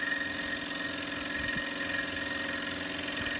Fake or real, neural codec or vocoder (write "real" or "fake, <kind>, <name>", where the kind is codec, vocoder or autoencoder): real